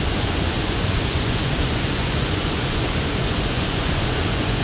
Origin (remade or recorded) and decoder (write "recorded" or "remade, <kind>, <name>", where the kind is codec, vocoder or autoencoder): remade, vocoder, Vocos